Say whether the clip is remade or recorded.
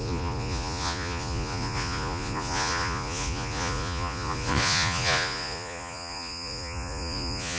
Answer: remade